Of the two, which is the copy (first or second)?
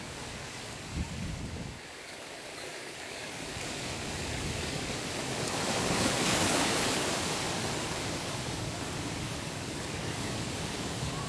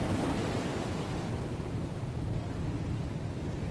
first